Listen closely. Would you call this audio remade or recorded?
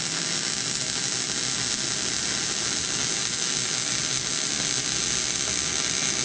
recorded